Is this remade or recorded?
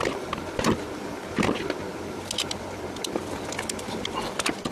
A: recorded